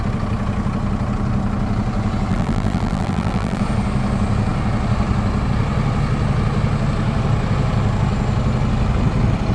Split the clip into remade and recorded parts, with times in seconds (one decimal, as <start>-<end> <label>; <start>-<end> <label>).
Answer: 0.0-2.3 recorded; 2.3-3.6 remade; 3.6-9.5 recorded